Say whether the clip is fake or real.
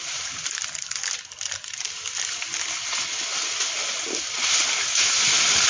real